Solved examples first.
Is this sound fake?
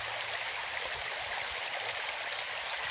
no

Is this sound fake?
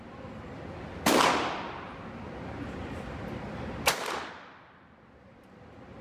no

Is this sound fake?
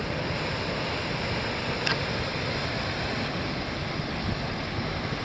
no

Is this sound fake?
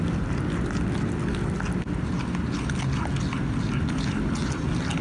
no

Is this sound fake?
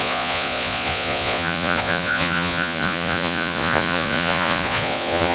yes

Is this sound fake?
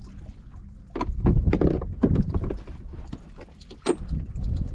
no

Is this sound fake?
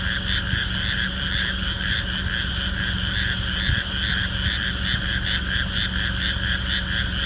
no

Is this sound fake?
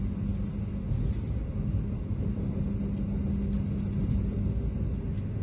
no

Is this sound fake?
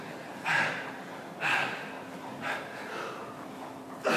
no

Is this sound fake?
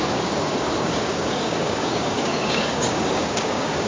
yes